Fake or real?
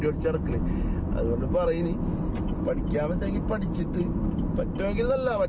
real